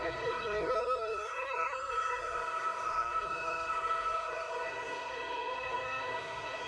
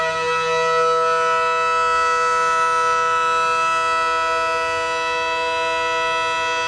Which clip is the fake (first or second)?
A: first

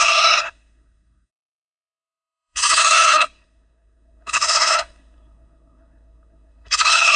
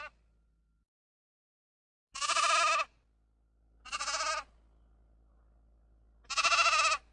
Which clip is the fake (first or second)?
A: first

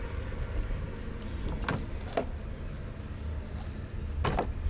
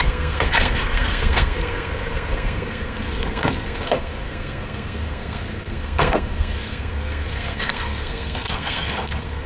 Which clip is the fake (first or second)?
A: second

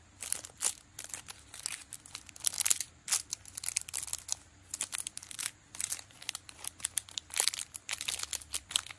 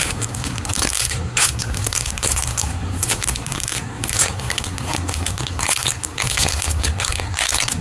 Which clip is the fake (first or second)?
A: second